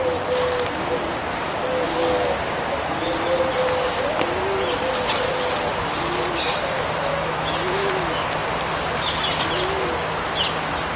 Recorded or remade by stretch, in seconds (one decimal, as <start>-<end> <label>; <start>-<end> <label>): 0.0-7.1 recorded; 7.1-7.9 remade; 7.9-11.0 recorded